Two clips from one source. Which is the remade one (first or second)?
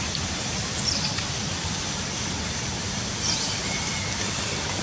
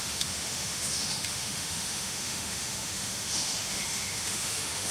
second